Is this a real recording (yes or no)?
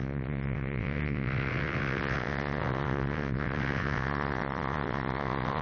no